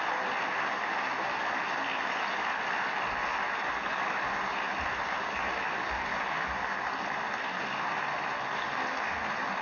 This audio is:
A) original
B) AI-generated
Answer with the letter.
A